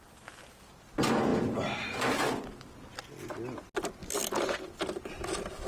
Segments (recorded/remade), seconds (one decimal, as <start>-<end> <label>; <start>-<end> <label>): 0.0-4.0 recorded; 4.0-5.7 remade